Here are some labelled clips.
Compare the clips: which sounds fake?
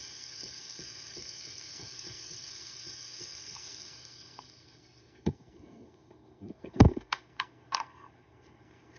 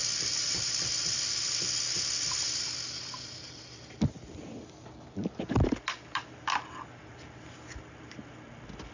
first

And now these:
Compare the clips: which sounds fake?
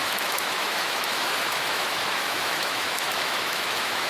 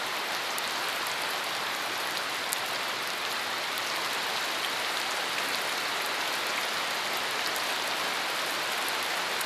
first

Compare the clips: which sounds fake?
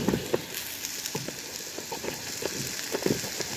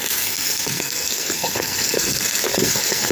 second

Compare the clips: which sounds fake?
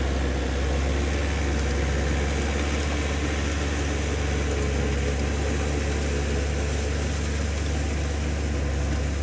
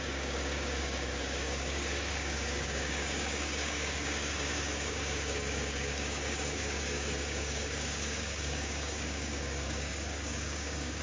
second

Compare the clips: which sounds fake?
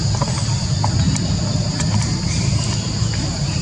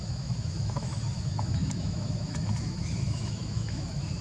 second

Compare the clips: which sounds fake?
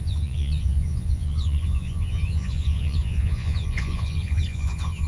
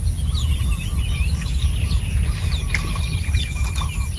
first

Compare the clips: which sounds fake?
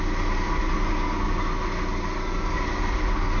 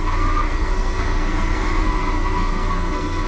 second